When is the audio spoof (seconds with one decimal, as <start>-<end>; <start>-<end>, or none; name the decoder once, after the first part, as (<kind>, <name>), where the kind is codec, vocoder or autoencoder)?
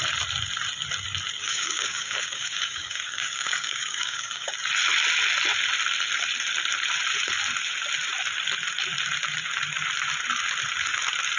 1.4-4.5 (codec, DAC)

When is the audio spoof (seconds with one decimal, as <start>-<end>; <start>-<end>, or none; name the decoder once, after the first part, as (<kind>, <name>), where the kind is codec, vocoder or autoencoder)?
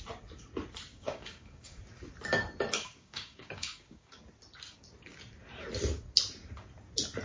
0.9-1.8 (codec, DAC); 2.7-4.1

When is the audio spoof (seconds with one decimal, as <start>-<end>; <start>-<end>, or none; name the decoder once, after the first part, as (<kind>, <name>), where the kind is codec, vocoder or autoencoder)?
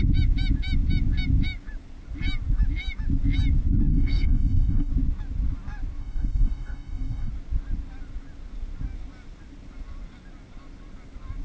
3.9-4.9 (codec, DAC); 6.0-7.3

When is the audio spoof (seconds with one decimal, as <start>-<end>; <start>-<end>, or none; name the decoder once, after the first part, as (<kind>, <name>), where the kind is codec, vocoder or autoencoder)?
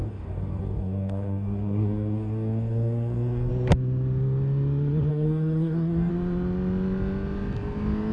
0.0-3.5 (codec, DAC); 5.1-6.1